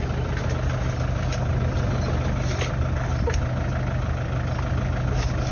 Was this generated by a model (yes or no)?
no